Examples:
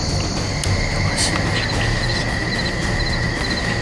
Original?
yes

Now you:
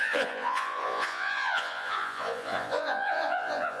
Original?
no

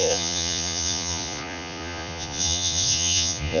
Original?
no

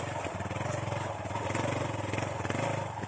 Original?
yes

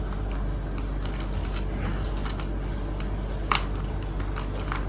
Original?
yes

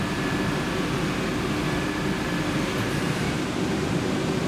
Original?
yes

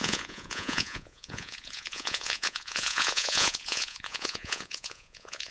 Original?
no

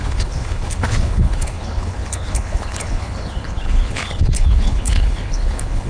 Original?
no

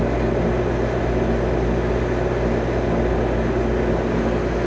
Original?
yes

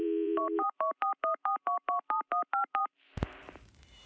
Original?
no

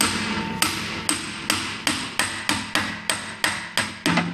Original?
yes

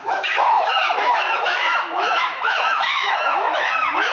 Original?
no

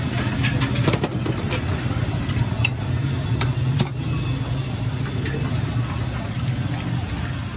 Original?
yes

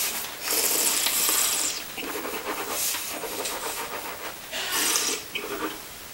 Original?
no